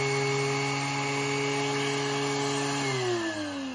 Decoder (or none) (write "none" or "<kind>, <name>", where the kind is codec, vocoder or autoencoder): none